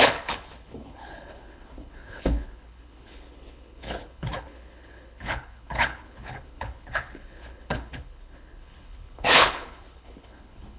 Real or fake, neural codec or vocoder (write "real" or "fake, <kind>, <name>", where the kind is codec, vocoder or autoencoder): fake, codec, HILCodec